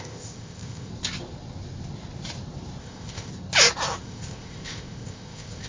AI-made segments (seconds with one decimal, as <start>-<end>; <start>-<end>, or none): 0.0-0.9; 2.8-3.3; 4.0-5.7